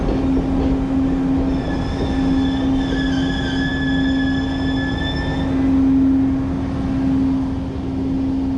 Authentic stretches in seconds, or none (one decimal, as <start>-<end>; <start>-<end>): 0.0-8.6